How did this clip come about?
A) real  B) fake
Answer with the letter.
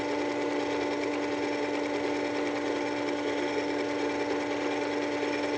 A